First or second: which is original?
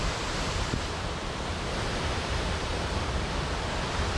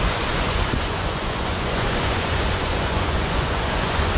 first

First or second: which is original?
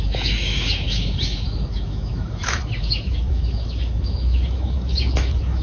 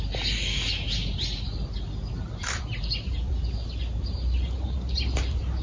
second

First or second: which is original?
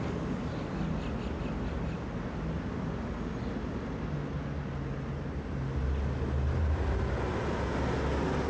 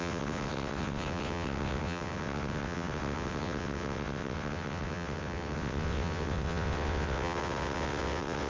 first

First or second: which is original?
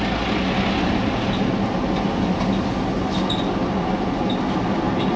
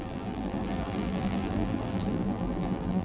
first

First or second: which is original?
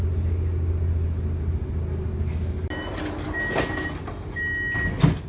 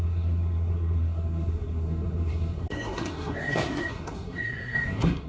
first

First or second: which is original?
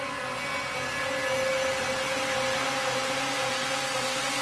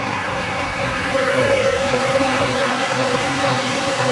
first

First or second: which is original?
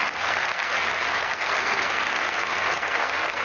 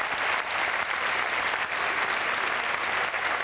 second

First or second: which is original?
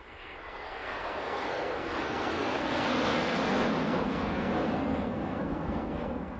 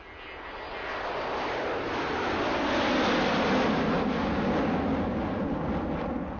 second